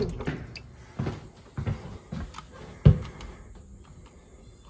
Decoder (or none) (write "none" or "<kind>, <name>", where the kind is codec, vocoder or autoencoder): none